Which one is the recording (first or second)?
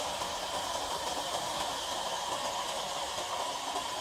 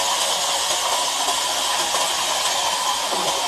second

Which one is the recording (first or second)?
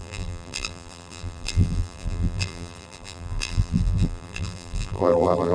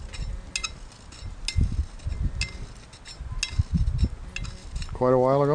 second